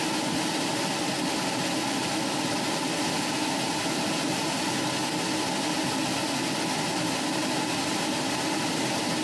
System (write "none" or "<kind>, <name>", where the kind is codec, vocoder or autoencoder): none